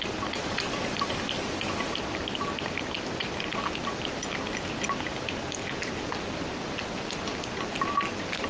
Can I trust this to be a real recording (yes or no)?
yes